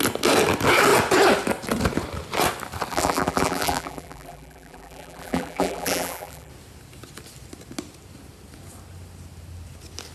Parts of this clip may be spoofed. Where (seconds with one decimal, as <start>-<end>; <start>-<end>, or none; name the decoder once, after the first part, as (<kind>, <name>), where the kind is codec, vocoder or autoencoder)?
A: 2.9-6.5 (vocoder, BigVGAN v2)